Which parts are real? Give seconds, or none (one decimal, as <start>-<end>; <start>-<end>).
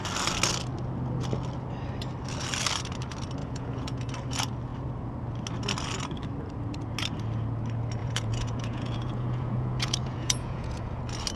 0.0-3.4; 4.1-8.0; 11.0-11.4